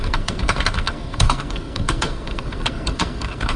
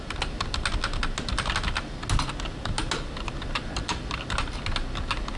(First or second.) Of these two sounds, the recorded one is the second